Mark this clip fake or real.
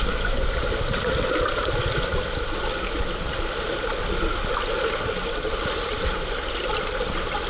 real